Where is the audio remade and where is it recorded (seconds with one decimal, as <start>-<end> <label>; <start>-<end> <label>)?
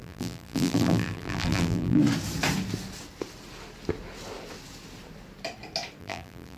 0.0-2.0 remade; 2.0-6.0 recorded; 6.0-6.6 remade